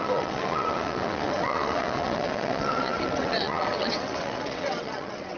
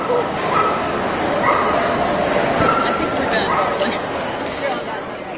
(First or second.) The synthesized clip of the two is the first